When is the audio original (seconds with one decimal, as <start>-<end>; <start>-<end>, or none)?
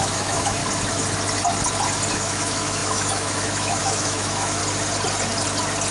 0.6-2.1; 4.6-5.9